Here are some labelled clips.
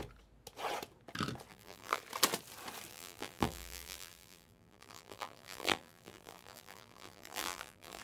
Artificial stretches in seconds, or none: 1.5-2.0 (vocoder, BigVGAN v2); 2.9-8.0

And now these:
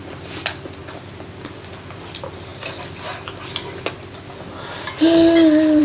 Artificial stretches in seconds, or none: none